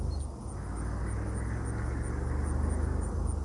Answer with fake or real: real